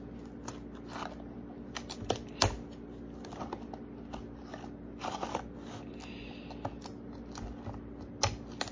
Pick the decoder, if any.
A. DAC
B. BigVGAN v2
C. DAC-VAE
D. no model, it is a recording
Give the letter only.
D